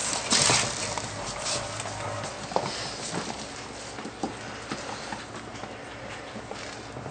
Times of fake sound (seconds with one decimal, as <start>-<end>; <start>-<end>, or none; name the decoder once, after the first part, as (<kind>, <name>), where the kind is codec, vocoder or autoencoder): none